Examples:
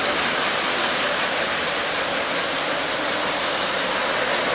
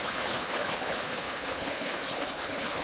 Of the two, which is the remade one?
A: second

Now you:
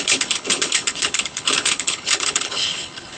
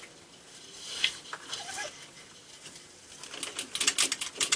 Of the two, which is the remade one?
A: first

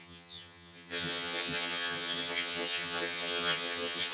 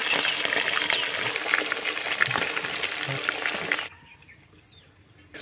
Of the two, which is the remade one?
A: first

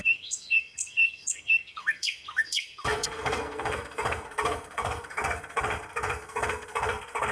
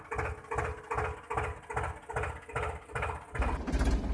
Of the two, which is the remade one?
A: first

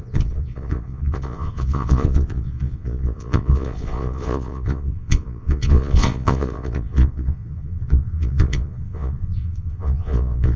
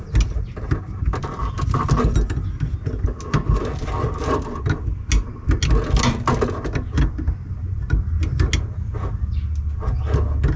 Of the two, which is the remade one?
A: first